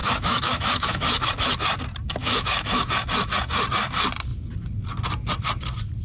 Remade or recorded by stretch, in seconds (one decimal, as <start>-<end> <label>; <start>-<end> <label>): 0.0-1.3 remade; 1.3-2.2 recorded; 2.2-2.9 remade; 2.9-6.0 recorded